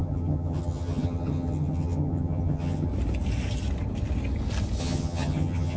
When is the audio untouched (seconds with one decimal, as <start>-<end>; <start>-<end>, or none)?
2.9-4.8